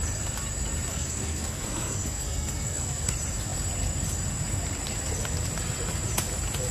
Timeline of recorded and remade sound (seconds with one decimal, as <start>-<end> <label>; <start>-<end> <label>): 0.0-0.9 recorded; 0.9-3.1 remade; 3.1-6.7 recorded